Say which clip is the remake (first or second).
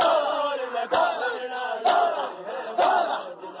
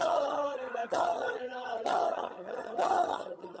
second